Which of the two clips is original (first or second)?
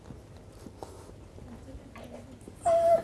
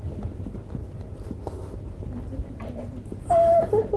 first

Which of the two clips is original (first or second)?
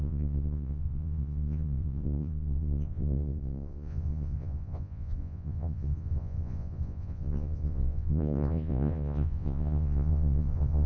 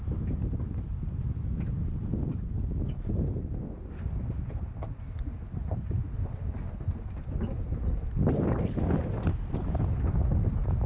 second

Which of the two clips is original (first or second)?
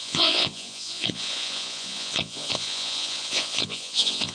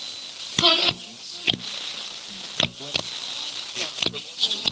second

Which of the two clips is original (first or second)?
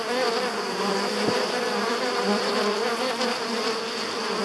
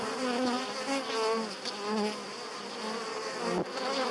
second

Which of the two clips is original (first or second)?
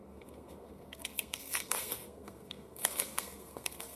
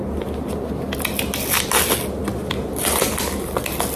second